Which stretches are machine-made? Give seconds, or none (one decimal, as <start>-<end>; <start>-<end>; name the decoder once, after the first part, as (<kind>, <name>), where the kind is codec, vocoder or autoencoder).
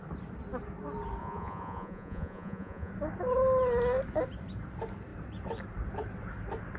1.2-2.9 (vocoder, Vocos)